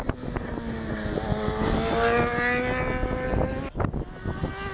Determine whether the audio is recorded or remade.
recorded